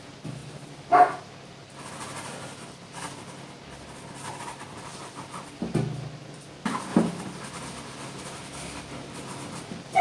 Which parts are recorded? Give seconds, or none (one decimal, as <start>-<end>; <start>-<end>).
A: none